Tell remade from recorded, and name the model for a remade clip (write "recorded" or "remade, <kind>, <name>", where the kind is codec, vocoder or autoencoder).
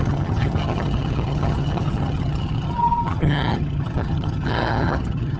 remade, vocoder, HiFi-GAN